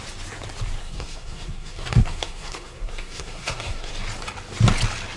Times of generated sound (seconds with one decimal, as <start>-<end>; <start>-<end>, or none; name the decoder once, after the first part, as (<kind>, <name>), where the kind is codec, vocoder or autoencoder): 0.8-3.9 (codec, SNAC)